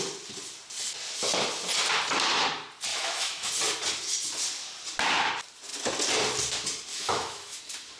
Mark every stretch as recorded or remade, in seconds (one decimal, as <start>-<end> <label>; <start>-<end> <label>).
0.0-2.9 recorded; 2.9-3.5 remade; 3.5-6.9 recorded; 6.9-7.6 remade; 7.6-8.0 recorded